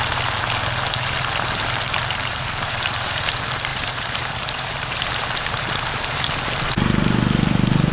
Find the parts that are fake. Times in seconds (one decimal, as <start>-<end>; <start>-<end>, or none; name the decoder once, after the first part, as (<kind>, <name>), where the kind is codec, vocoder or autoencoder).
2.3-3.3 (vocoder, BigVGAN v2); 3.7-6.3